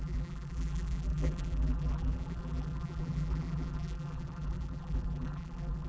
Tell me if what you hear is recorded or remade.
remade